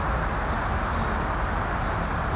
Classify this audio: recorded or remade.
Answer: recorded